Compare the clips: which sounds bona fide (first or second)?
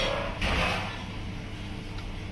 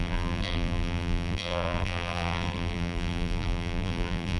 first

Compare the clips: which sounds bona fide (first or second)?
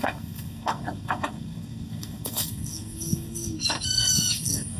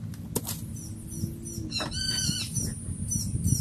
second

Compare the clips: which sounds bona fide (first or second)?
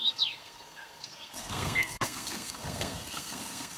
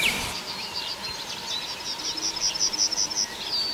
second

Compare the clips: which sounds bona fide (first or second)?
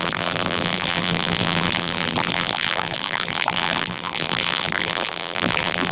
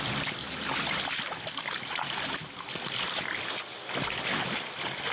second